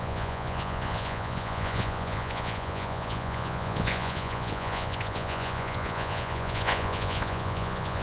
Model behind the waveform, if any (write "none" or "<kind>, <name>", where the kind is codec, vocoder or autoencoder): vocoder, Vocos